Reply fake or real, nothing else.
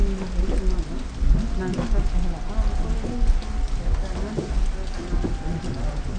real